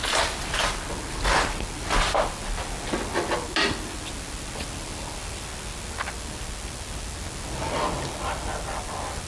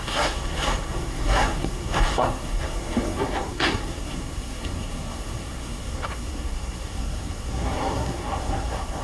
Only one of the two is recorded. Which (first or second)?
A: first